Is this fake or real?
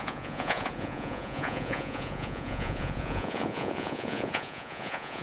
fake